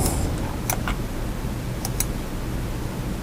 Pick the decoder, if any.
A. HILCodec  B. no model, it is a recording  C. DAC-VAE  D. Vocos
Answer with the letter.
B